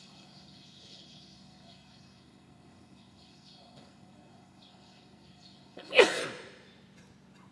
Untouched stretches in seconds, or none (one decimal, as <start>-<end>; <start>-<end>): 6.2-7.5